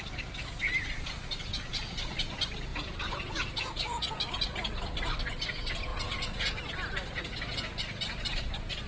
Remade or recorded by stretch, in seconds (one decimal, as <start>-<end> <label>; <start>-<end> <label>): 0.0-1.5 recorded; 1.5-2.0 remade; 2.0-2.7 recorded; 2.7-4.1 remade; 4.1-5.9 recorded; 5.9-6.5 remade; 6.5-8.9 recorded